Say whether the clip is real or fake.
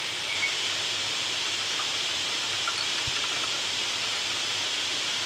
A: fake